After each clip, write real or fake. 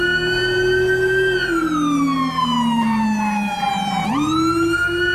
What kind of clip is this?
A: real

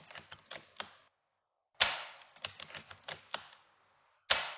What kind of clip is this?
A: real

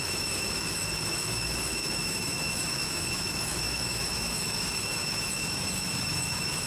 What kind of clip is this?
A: fake